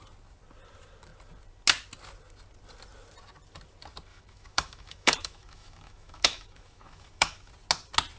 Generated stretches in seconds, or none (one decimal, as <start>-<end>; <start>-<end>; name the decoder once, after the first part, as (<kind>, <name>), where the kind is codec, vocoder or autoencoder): 4.1-7.5 (autoencoder, DAC-VAE)